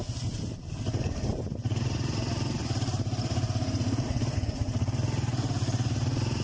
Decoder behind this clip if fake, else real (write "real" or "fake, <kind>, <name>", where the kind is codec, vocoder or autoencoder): fake, vocoder, BigVGAN v2